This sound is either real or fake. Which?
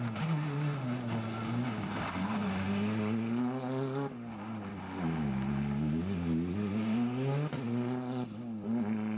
real